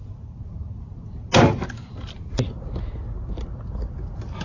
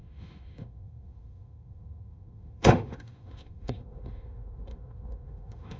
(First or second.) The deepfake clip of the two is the second